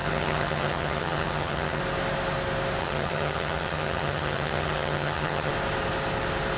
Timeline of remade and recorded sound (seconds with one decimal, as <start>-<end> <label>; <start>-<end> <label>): 0.0-1.8 remade; 1.8-2.8 recorded; 2.8-5.5 remade; 5.5-6.6 recorded